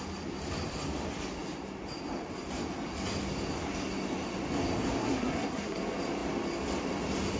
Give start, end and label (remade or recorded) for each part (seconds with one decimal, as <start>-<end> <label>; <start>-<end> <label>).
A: 0.0-5.0 recorded; 5.0-5.8 remade; 5.8-7.4 recorded